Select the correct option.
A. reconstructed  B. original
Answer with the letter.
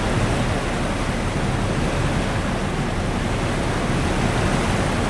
B